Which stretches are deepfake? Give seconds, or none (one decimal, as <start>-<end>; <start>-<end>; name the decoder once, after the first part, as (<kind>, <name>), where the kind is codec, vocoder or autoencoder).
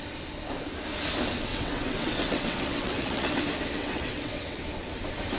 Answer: 1.5-3.4 (vocoder, WaveNeXt); 3.8-4.6